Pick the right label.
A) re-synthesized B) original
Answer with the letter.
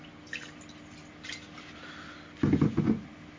B